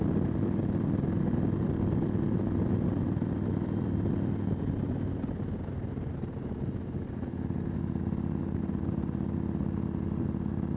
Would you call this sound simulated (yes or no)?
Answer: no